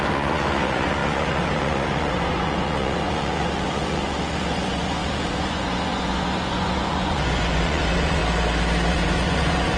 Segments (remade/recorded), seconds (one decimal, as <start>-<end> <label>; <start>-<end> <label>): 0.0-8.2 remade; 8.2-8.9 recorded; 8.9-9.8 remade